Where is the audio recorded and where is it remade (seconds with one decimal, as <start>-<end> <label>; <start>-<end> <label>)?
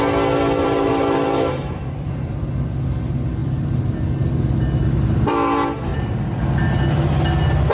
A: 0.0-0.6 recorded; 0.6-1.8 remade; 1.8-5.9 recorded; 5.9-6.4 remade; 6.4-7.7 recorded